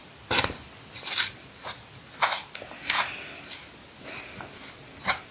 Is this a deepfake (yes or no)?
no